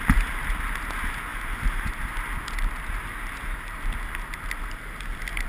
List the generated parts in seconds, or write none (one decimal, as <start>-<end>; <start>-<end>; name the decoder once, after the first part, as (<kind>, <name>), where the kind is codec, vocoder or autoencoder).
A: none